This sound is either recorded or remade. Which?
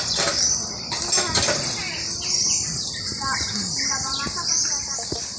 recorded